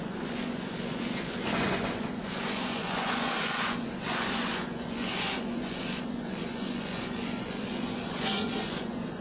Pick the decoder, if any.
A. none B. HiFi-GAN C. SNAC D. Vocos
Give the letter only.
D